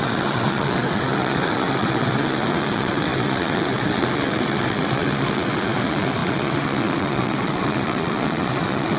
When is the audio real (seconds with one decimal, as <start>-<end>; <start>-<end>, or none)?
none